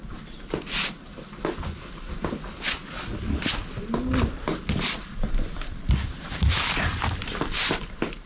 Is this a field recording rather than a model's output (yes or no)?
yes